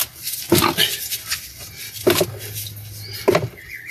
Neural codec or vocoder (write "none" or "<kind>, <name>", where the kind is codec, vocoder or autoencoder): none